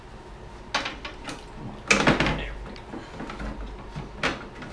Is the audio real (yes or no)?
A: yes